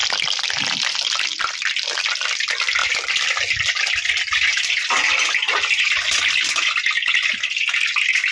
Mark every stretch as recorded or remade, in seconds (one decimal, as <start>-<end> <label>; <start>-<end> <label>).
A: 0.0-8.3 recorded

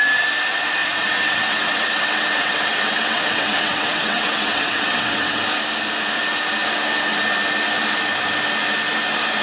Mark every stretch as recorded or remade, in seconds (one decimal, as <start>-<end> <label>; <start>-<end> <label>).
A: 0.0-0.8 recorded; 0.8-5.4 remade; 5.4-9.4 recorded

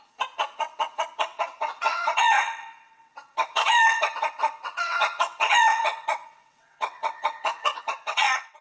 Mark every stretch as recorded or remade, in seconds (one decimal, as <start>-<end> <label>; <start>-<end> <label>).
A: 0.0-8.6 remade

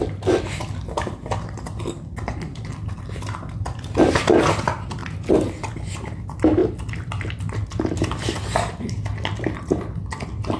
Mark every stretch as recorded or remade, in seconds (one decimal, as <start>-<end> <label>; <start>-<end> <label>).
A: 0.0-10.6 recorded